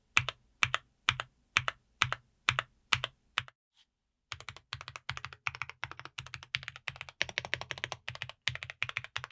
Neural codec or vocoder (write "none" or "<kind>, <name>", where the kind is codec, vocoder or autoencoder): none